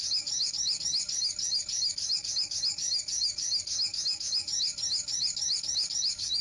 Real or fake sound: fake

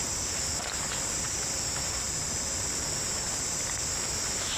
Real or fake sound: real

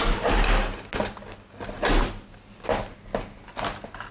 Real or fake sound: real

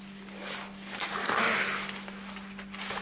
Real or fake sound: real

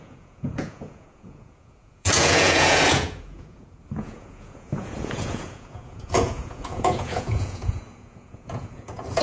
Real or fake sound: fake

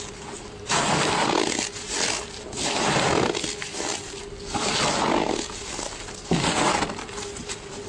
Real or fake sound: real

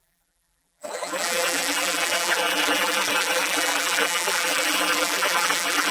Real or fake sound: fake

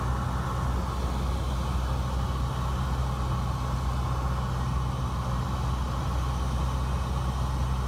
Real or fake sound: real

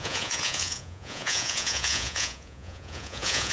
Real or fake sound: fake